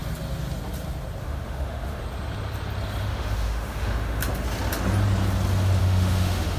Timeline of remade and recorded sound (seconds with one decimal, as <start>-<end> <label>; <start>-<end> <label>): 0.0-1.2 recorded; 1.2-2.0 remade; 2.0-3.0 recorded; 3.0-4.2 remade; 4.2-5.8 recorded; 5.8-6.6 remade